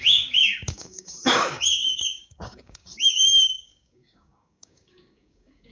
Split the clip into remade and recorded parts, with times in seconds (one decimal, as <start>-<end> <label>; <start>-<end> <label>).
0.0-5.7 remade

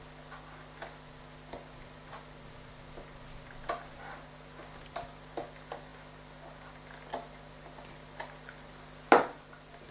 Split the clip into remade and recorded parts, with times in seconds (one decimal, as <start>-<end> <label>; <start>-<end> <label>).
0.0-9.9 recorded

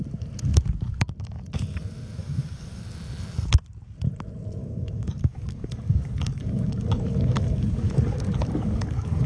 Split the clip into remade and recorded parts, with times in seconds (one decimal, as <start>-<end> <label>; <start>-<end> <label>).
0.0-2.2 recorded; 2.2-2.8 remade; 2.8-4.6 recorded; 4.6-9.3 remade

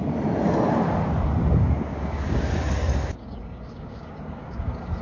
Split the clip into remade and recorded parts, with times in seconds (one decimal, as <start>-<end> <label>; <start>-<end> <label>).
0.0-1.9 recorded; 1.9-2.5 remade; 2.5-3.0 recorded; 3.0-5.0 remade

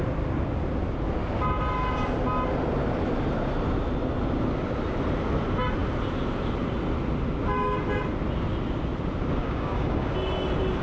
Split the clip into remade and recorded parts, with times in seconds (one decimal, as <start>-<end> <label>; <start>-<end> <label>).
0.0-9.4 recorded; 9.4-10.1 remade; 10.1-10.8 recorded